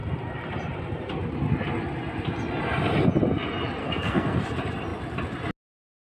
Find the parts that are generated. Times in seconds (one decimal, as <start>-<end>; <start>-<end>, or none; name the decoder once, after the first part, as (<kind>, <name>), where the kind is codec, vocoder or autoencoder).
3.8-4.4 (codec, SNAC)

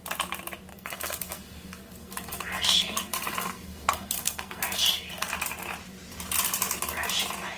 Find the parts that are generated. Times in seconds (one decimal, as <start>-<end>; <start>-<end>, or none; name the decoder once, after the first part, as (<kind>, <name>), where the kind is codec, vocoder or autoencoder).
0.7-5.3 (codec, SNAC)

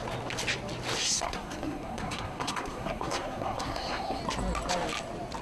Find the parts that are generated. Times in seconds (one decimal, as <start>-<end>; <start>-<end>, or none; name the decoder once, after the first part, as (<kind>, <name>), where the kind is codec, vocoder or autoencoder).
1.0-4.2 (codec, SNAC)

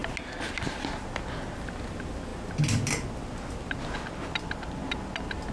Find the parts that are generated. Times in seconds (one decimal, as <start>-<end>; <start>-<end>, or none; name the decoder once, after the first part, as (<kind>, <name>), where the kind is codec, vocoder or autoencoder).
none

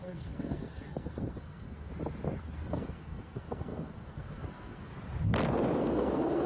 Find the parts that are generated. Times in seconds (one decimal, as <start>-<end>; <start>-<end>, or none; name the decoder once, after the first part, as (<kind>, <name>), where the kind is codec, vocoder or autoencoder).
0.0-1.9 (codec, SNAC); 2.4-4.9; 5.8-6.5

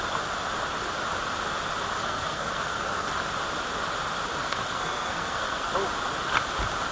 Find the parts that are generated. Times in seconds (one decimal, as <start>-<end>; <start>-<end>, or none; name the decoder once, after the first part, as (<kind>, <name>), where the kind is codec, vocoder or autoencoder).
2.0-3.1 (codec, SNAC); 4.4-5.7

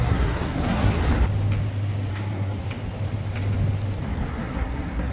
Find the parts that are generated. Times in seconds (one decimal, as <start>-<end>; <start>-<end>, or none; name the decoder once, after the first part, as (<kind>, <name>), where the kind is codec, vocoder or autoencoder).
0.0-1.0 (codec, SNAC); 2.1-2.6; 4.3-5.1

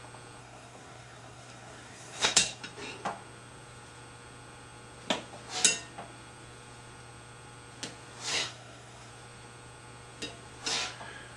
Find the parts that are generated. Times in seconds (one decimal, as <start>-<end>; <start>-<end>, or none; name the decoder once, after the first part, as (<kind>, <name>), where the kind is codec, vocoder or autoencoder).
0.4-2.6 (codec, SNAC); 8.3-9.1